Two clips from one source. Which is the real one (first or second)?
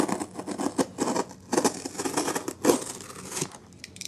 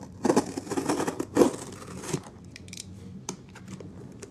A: first